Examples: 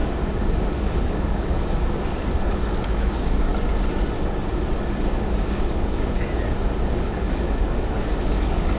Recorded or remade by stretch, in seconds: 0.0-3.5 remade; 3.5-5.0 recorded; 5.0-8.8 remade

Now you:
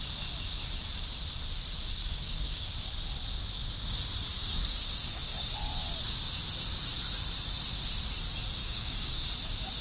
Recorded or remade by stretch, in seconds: 0.0-2.0 recorded; 2.0-2.7 remade; 2.7-4.3 recorded; 4.3-5.5 remade; 5.5-8.6 recorded; 8.6-9.1 remade; 9.1-9.8 recorded

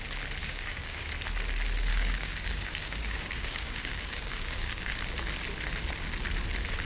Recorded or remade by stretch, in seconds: 0.0-0.4 recorded; 0.4-1.1 remade; 1.1-1.9 recorded; 1.9-5.0 remade; 5.0-6.8 recorded

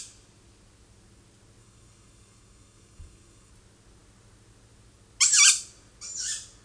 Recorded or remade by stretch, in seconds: 0.0-1.6 recorded; 1.6-3.5 remade; 3.5-6.6 recorded

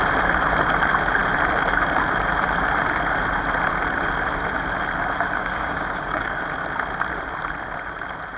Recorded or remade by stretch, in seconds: 0.0-5.4 recorded; 5.4-6.4 remade; 6.4-8.4 recorded

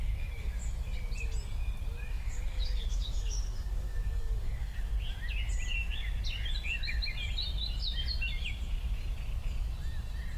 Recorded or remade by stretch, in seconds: 0.0-0.6 remade; 0.6-2.1 recorded; 2.1-4.9 remade; 4.9-10.4 recorded

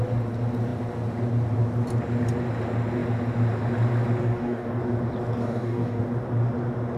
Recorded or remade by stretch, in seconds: 0.0-4.2 recorded; 4.2-4.8 remade; 4.8-5.4 recorded; 5.4-6.0 remade; 6.0-7.0 recorded